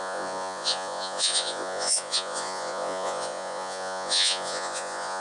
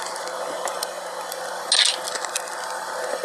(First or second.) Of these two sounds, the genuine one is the second